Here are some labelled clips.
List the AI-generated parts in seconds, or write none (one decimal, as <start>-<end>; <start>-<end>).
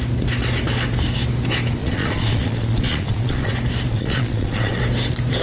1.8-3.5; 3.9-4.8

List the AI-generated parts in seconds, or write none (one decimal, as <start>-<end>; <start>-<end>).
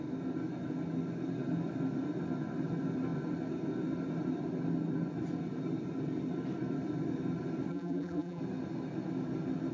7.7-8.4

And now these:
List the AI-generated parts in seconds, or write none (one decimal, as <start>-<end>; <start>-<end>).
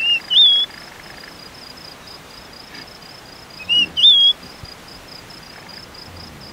none